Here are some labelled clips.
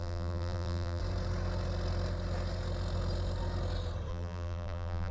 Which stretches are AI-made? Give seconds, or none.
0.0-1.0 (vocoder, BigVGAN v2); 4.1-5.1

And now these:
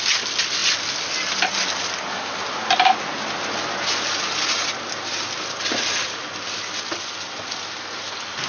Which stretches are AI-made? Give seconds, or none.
none

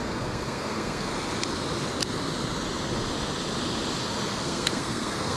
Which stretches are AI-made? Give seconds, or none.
0.0-1.1 (codec, SNAC); 4.3-5.4

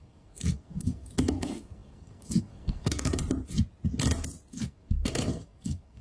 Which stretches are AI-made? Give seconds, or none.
0.0-3.2 (codec, SNAC); 4.5-6.0

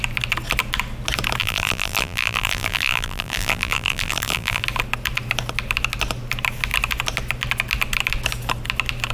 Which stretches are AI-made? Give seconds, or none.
1.4-4.6 (vocoder, BigVGAN v2)

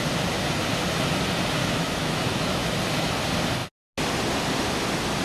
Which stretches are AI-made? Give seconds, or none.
1.6-2.7 (autoencoder, DAC-VAE)